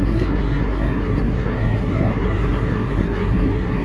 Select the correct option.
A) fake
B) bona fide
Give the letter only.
A